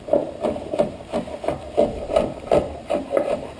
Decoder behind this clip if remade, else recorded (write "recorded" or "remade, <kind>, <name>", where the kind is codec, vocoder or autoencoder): recorded